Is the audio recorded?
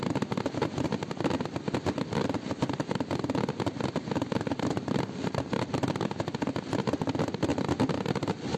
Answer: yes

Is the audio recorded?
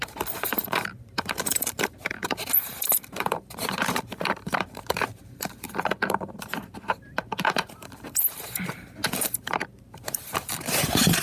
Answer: no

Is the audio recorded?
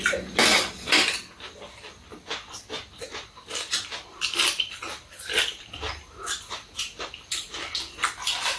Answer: no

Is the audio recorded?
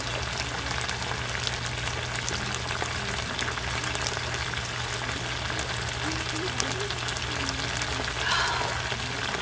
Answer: yes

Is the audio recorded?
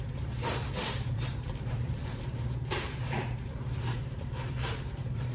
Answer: no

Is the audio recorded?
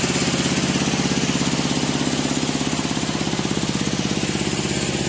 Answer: yes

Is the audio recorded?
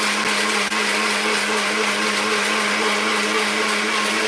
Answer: yes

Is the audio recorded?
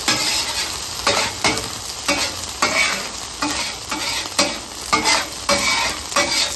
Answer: yes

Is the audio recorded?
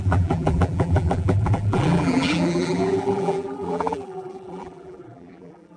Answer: no